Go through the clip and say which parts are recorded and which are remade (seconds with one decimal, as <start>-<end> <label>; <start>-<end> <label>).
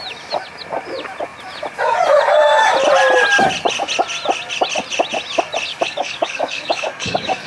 0.0-5.7 recorded; 5.7-7.5 remade